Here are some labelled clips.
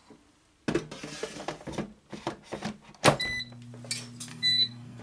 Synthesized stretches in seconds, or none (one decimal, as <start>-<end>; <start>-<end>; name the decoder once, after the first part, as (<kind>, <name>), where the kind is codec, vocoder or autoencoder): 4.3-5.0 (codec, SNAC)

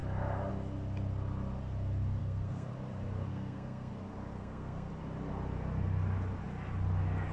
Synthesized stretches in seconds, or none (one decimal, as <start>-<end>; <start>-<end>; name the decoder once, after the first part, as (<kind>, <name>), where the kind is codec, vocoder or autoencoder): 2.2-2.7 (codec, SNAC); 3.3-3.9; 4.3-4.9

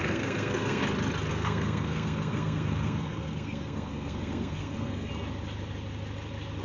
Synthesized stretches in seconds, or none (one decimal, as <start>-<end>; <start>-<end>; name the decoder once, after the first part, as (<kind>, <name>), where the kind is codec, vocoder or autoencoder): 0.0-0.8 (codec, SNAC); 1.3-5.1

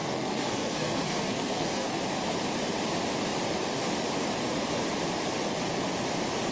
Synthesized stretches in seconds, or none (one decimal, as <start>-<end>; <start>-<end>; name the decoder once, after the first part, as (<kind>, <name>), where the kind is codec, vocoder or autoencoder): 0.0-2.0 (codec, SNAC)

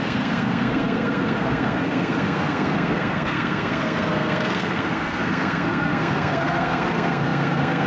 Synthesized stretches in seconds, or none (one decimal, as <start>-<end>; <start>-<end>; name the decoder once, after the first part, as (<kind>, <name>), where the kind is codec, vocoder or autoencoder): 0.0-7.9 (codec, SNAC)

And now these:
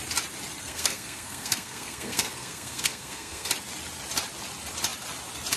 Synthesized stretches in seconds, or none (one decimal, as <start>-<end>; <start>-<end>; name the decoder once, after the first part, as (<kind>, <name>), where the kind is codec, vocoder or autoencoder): 0.6-3.5 (codec, SNAC)

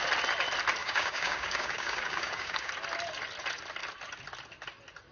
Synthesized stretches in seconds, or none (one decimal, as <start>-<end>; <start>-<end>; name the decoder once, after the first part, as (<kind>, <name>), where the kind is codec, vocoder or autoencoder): 0.8-2.7 (codec, DAC)